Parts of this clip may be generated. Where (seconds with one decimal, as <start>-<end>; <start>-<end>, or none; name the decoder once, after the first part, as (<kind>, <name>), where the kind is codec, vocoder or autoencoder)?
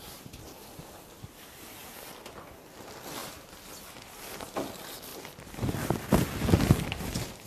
none